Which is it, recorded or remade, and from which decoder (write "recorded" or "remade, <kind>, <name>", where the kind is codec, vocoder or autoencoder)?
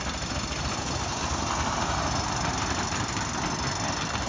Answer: recorded